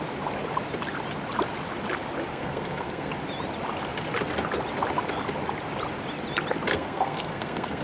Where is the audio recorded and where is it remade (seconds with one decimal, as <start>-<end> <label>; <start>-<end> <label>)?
0.0-2.3 recorded; 2.3-3.1 remade; 3.1-6.7 recorded; 6.7-7.8 remade